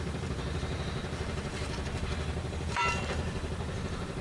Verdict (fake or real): fake